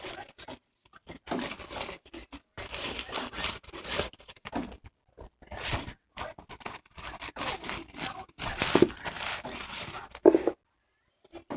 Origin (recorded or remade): recorded